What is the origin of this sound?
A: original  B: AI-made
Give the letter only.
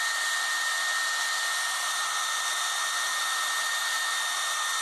A